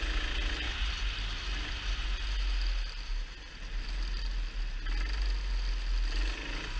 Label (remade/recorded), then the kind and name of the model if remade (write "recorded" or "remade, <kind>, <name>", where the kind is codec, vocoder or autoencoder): recorded